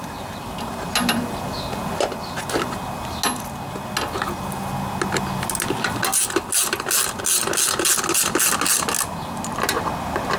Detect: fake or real real